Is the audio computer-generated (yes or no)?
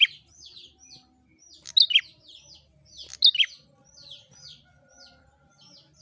no